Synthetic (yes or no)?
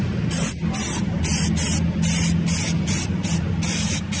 no